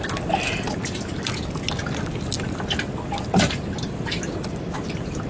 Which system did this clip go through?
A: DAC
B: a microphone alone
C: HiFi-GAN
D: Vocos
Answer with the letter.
B